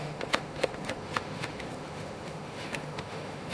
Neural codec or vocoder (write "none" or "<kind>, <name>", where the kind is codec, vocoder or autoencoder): autoencoder, DAC-VAE